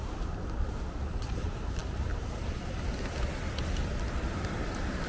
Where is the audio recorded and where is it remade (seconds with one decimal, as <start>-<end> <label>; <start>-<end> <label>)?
0.0-5.1 recorded